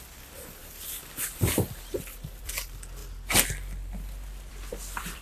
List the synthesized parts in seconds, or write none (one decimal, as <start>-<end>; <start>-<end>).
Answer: 0.0-3.0; 4.5-5.2